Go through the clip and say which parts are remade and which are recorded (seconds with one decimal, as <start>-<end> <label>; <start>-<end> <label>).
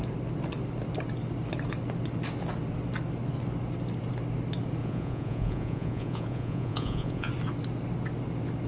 0.0-4.8 recorded; 4.8-7.3 remade; 7.3-8.7 recorded